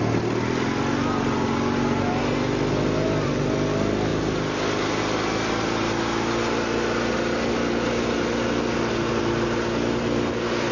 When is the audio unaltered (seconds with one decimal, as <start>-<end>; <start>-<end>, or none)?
0.0-10.7